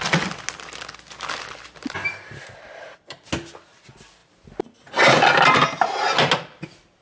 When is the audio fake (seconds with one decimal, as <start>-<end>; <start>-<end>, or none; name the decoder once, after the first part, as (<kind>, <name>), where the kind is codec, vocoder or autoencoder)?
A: none